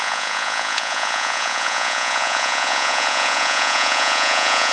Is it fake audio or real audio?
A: fake